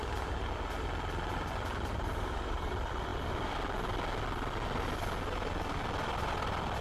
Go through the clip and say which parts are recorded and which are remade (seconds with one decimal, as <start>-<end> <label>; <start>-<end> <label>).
0.0-2.1 recorded; 2.1-2.7 remade; 2.7-6.8 recorded